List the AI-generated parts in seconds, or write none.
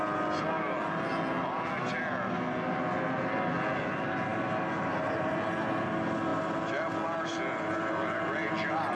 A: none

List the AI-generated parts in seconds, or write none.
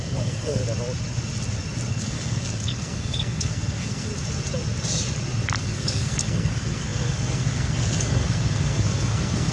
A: 0.0-0.6 (codec, SNAC); 1.9-4.1; 5.6-9.5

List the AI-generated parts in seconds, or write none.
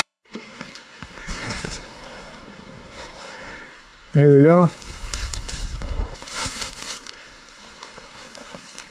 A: 0.0-8.9 (codec, SNAC)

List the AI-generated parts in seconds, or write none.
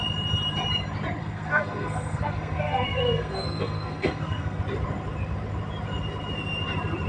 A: 1.2-4.6 (codec, SNAC)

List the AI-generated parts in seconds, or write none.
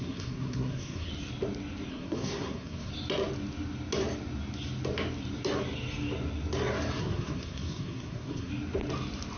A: 0.0-1.1 (codec, SNAC); 1.9-2.9; 7.0-8.5